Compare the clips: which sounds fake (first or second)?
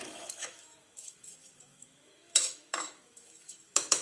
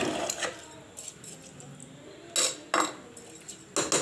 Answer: first